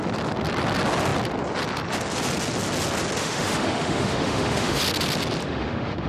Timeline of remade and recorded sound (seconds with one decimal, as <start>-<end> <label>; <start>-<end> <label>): 0.0-3.2 recorded; 3.2-4.8 remade; 4.8-5.4 recorded; 5.4-6.1 remade